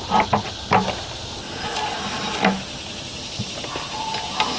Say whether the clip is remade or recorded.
recorded